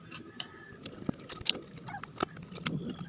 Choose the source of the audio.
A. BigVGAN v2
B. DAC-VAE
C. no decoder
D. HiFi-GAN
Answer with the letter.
C